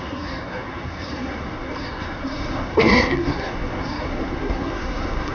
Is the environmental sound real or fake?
fake